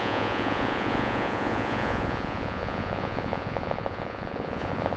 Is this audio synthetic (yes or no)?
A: yes